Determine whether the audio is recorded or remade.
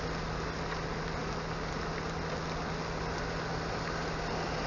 recorded